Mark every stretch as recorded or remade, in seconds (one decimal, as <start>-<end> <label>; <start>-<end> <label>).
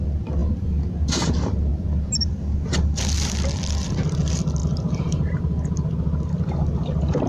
0.0-4.6 recorded; 4.6-5.4 remade; 5.4-7.3 recorded